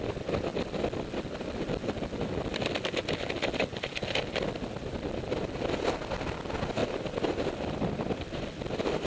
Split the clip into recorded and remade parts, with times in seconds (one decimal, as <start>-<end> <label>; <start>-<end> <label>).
0.0-0.5 remade; 0.5-4.7 recorded; 4.7-9.1 remade

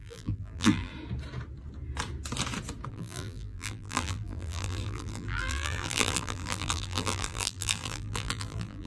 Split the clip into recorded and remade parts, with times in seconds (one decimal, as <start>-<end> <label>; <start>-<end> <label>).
0.0-0.9 remade; 0.9-2.9 recorded; 2.9-8.9 remade

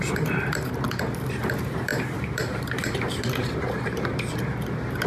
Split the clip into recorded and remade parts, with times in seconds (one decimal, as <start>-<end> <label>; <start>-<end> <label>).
0.0-5.1 remade

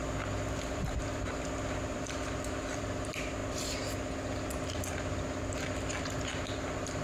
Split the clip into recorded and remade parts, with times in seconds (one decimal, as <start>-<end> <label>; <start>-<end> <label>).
0.0-3.4 remade; 3.4-5.7 recorded; 5.7-7.0 remade

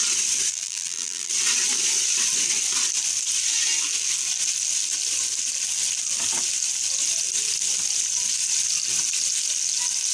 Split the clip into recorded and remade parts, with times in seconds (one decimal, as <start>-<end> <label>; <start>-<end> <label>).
0.0-0.5 recorded; 0.5-1.3 remade; 1.3-10.1 recorded

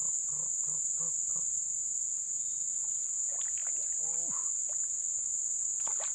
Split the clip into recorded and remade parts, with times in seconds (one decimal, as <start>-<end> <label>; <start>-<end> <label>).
0.0-1.3 recorded; 1.3-1.8 remade; 1.8-6.1 recorded

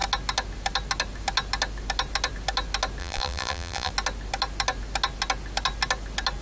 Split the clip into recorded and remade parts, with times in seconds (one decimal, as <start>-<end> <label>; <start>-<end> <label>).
0.0-3.0 recorded; 3.0-3.9 remade; 3.9-6.4 recorded

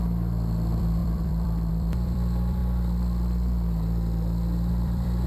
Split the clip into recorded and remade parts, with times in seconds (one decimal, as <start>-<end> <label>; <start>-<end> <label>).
0.0-2.6 remade; 2.6-4.7 recorded; 4.7-5.3 remade